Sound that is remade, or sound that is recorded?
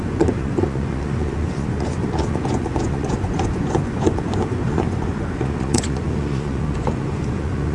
remade